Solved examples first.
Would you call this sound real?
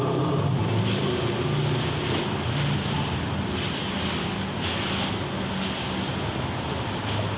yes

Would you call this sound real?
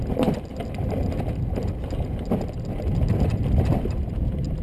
yes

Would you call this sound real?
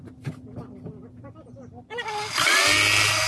yes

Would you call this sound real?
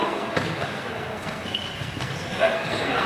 no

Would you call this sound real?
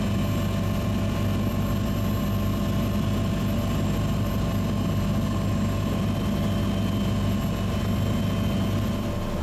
yes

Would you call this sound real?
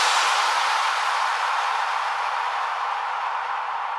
yes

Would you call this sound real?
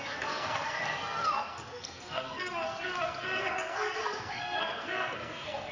no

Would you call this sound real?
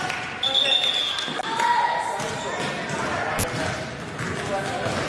yes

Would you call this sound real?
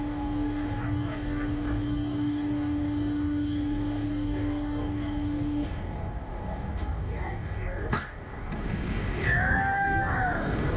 no